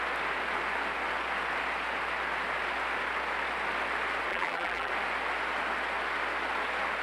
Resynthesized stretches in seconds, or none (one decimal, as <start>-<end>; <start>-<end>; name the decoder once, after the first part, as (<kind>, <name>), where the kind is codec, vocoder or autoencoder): 4.3-4.9 (vocoder, BigVGAN v2)

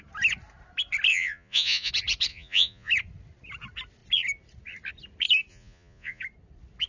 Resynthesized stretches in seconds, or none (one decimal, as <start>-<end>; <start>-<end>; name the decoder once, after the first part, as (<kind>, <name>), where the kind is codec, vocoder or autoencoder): 1.1-1.9 (vocoder, Vocos); 2.3-2.9; 5.5-6.2

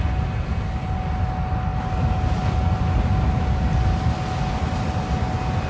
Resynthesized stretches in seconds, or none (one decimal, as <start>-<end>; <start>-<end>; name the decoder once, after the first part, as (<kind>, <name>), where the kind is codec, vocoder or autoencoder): none

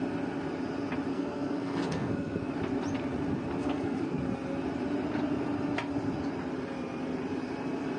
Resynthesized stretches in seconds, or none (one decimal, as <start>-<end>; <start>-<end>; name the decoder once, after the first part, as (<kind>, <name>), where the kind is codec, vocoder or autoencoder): 1.1-2.5 (codec, SNAC); 3.6-4.2

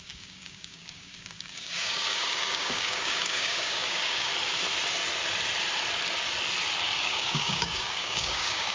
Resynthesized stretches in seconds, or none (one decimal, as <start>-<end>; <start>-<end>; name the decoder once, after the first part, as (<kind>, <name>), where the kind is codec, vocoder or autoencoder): 0.0-4.3 (codec, DAC); 7.0-8.7

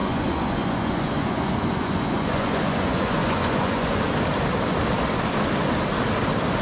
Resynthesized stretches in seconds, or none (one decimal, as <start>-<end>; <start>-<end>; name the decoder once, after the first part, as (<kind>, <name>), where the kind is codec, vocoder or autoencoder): 0.0-4.0 (vocoder, Vocos)

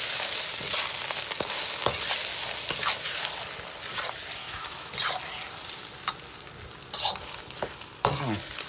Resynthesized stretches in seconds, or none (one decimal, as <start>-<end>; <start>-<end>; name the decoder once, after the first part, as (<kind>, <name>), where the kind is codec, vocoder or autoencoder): 4.4-4.9 (autoencoder, DAC-VAE)